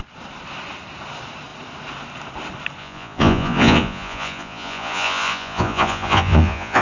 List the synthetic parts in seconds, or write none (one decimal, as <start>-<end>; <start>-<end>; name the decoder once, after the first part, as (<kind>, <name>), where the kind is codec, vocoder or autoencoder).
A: 2.8-6.8 (vocoder, Vocos)